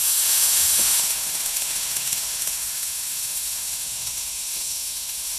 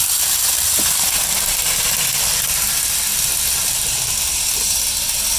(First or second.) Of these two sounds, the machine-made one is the first